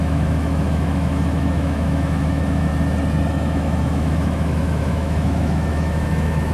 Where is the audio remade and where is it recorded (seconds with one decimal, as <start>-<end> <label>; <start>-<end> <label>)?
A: 0.0-2.7 remade; 2.7-3.3 recorded; 3.3-6.5 remade